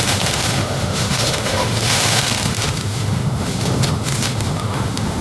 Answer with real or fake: fake